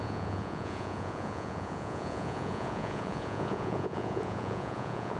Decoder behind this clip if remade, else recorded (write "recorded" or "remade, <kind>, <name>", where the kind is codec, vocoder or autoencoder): remade, vocoder, Vocos